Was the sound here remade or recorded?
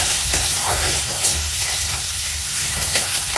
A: remade